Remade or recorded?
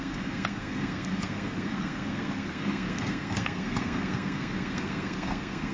remade